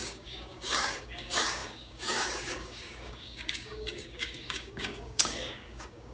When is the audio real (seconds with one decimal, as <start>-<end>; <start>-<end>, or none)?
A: none